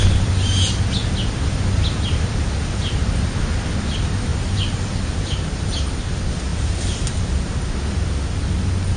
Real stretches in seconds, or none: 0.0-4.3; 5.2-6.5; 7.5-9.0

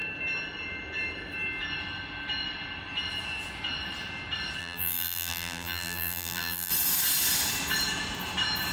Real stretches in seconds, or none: 0.0-4.6; 6.7-8.7

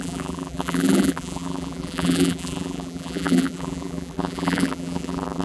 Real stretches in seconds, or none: none